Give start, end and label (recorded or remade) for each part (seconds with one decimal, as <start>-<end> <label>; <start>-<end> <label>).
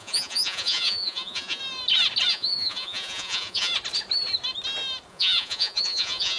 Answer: 0.0-1.6 remade; 1.6-2.3 recorded; 2.3-3.7 remade; 3.7-5.1 recorded; 5.1-6.4 remade